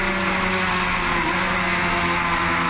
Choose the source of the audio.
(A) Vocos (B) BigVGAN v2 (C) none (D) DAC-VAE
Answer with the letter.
C